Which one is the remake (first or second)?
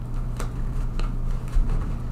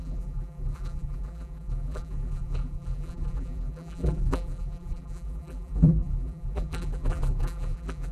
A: second